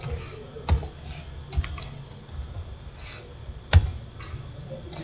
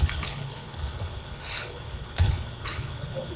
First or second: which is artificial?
second